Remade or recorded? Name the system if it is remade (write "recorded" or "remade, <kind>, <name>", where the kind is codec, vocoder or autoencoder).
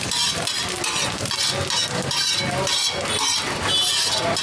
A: recorded